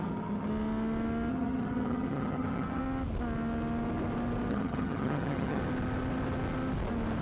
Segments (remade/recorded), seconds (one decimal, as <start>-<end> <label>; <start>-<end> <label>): 0.0-0.5 remade; 0.5-1.3 recorded; 1.3-2.8 remade; 2.8-4.5 recorded; 4.5-5.6 remade; 5.6-7.2 recorded